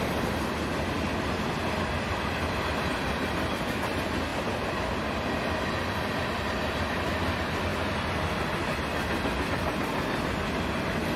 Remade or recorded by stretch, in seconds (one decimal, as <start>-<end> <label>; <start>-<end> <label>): 0.0-11.2 recorded